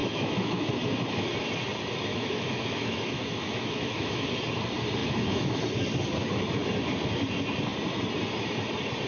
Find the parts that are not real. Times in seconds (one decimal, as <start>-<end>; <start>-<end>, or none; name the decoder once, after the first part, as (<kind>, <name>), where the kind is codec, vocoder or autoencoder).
0.0-0.7 (autoencoder, DAC-VAE); 2.1-4.3; 5.0-5.6